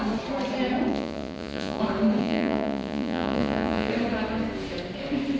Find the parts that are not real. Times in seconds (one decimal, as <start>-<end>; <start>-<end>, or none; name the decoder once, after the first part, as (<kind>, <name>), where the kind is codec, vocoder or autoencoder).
0.9-1.8 (vocoder, Vocos); 2.2-3.9